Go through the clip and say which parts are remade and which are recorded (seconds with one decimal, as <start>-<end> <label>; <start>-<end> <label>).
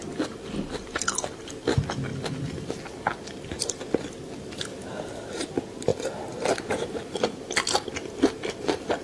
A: 0.0-9.0 recorded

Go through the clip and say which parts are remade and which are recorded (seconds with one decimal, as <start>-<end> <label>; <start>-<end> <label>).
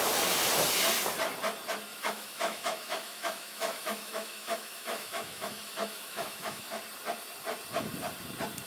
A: 0.0-1.9 recorded; 1.9-6.8 remade; 6.8-8.7 recorded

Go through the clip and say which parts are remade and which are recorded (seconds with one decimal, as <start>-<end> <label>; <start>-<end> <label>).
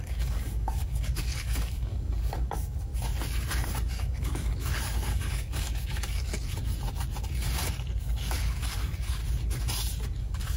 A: 0.0-2.9 remade; 2.9-3.9 recorded; 3.9-6.3 remade; 6.3-8.0 recorded; 8.0-9.2 remade; 9.2-10.2 recorded; 10.2-10.6 remade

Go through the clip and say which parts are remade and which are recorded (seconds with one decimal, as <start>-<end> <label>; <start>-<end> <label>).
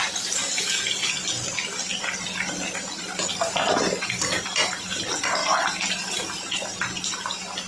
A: 0.0-7.7 recorded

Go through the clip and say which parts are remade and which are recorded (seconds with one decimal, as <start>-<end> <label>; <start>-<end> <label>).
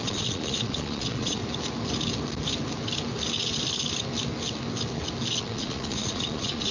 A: 0.0-1.4 remade; 1.4-5.4 recorded; 5.4-6.7 remade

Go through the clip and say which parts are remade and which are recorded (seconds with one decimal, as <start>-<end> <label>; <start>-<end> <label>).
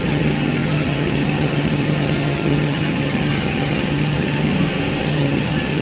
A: 0.0-4.5 remade; 4.5-5.0 recorded; 5.0-5.8 remade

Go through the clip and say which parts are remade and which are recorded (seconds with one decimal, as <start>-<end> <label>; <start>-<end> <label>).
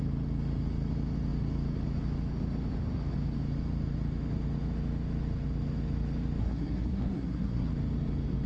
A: 0.0-6.4 recorded; 6.4-7.7 remade; 7.7-8.5 recorded